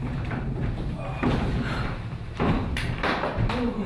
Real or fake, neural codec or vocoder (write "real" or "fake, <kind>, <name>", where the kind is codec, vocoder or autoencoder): fake, vocoder, BigVGAN v2